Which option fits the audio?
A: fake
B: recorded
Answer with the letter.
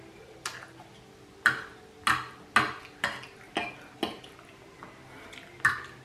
B